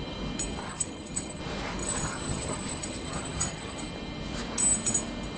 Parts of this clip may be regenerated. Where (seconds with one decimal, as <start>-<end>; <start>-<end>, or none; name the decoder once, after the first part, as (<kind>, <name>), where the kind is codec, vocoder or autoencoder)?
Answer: 0.6-1.4 (vocoder, HiFi-GAN); 1.8-3.8